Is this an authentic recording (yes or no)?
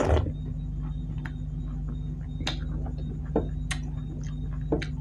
yes